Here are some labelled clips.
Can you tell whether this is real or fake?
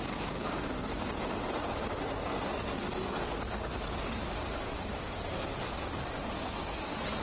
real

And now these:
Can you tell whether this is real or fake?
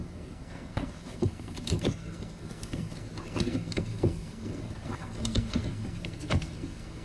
fake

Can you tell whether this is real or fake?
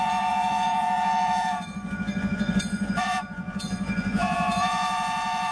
fake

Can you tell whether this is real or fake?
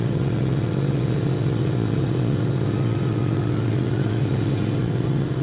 fake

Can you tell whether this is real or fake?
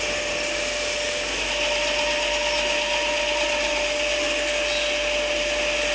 real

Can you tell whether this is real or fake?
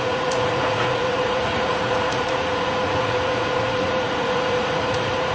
fake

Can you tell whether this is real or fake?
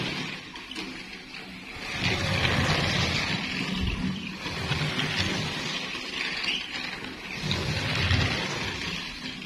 real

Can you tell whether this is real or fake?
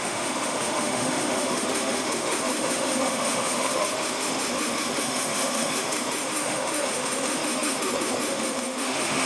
fake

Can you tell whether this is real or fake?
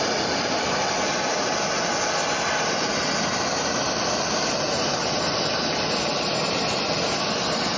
fake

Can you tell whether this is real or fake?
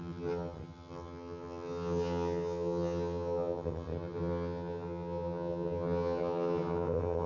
fake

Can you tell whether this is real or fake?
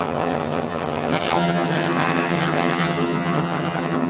fake